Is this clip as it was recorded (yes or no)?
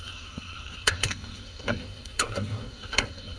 no